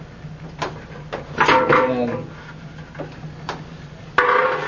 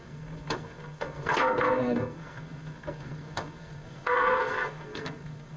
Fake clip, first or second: second